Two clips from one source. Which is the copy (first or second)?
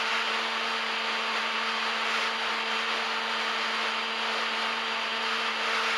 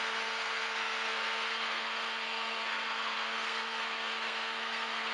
second